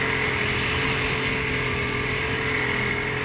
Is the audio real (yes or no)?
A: yes